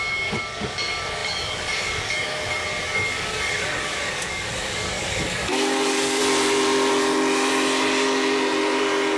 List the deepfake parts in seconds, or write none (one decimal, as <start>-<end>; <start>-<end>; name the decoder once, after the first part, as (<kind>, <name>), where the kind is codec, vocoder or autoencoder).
0.0-6.2 (codec, DAC)